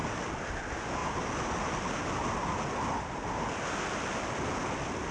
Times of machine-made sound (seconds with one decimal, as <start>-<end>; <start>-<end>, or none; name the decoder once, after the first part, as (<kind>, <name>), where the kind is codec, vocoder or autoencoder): none